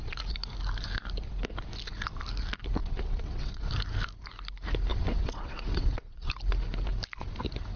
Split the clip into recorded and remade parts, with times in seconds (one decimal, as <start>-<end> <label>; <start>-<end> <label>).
0.0-2.8 recorded; 2.8-3.7 remade; 3.7-4.9 recorded; 4.9-6.3 remade; 6.3-7.8 recorded

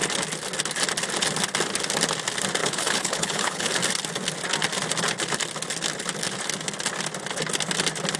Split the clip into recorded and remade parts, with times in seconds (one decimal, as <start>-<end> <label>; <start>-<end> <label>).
0.0-2.6 recorded; 2.6-3.7 remade; 3.7-8.2 recorded

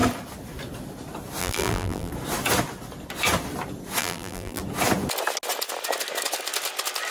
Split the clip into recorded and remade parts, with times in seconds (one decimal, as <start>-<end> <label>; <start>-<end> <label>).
0.0-1.4 recorded; 1.4-2.1 remade; 2.1-4.0 recorded; 4.0-4.6 remade; 4.6-7.1 recorded